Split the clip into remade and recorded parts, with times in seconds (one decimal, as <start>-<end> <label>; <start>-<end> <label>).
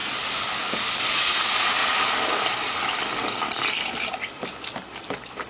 0.0-5.5 recorded